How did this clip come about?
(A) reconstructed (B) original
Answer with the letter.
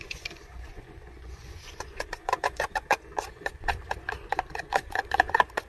A